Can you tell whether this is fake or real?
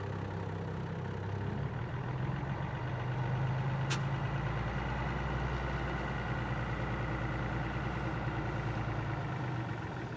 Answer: real